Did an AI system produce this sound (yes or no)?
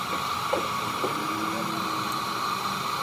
no